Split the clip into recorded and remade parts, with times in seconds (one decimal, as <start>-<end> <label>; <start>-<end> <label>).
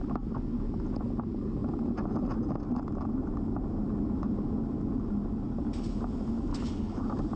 0.0-6.5 recorded; 6.5-7.0 remade; 7.0-7.4 recorded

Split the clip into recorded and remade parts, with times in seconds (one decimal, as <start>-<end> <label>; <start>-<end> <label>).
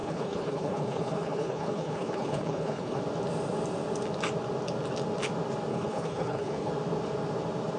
0.0-3.0 remade; 3.0-5.7 recorded; 5.7-6.7 remade; 6.7-7.8 recorded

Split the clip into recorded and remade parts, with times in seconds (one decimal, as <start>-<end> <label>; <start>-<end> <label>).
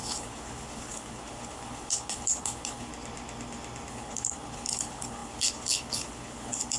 0.0-2.9 remade; 2.9-3.9 recorded; 3.9-6.8 remade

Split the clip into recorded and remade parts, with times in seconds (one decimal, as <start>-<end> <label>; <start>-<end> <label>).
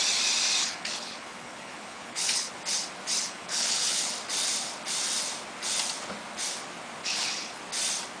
0.0-0.6 recorded; 0.6-2.5 remade; 2.5-3.2 recorded; 3.2-4.1 remade; 4.1-7.0 recorded; 7.0-7.6 remade; 7.6-8.2 recorded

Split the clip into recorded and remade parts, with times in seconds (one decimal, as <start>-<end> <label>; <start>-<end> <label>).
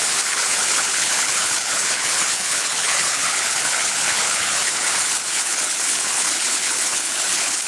0.0-7.7 remade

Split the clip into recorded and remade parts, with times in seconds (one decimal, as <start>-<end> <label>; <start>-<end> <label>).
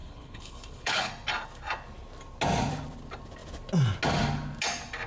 0.0-1.1 remade; 1.1-5.1 recorded